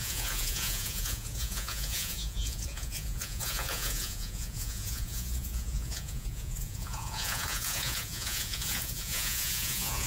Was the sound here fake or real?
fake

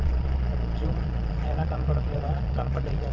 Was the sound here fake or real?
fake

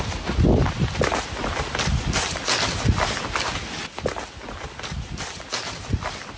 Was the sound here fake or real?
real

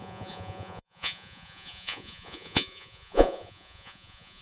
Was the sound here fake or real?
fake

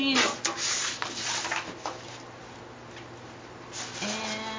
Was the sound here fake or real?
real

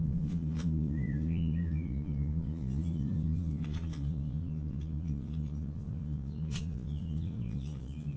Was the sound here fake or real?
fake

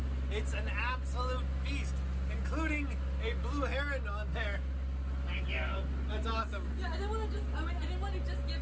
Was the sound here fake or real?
real